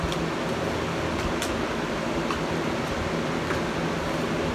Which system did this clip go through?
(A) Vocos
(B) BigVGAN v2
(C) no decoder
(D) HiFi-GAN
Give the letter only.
C